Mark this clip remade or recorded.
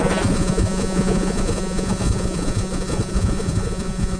remade